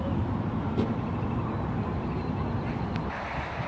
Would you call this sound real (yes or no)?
yes